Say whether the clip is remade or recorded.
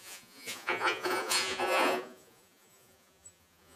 remade